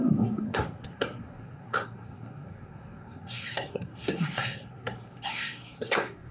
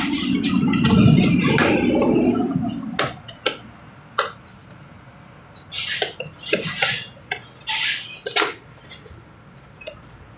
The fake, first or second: first